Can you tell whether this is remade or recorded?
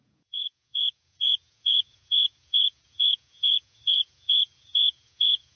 remade